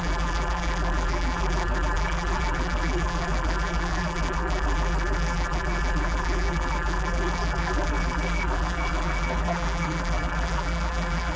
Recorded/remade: remade